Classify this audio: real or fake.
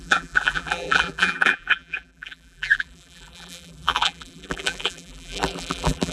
fake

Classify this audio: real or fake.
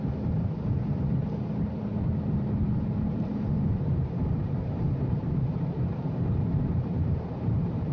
fake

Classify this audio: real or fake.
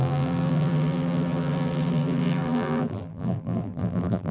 fake